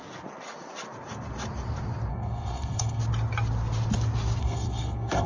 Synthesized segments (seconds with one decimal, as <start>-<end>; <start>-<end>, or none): 2.1-3.0; 4.4-5.3